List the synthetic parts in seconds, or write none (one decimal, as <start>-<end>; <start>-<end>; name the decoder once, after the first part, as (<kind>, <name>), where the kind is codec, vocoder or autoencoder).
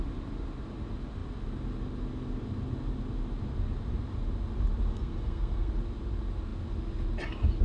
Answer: 4.9-5.7 (codec, SNAC)